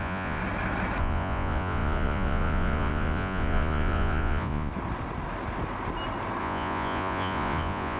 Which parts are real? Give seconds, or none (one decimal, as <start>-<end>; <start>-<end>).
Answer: 0.4-1.0; 4.7-6.4